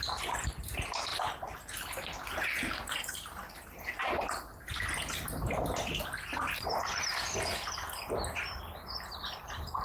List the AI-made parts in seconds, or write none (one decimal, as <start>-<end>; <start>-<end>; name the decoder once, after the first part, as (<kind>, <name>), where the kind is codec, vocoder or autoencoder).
none